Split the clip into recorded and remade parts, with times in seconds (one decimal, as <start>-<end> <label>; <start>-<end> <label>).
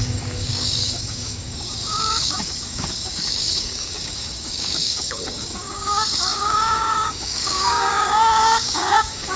0.0-9.4 remade